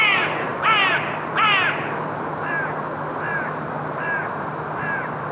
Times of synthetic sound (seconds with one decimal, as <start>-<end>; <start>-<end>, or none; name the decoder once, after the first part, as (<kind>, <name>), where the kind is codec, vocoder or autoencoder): none